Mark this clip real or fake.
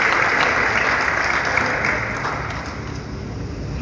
real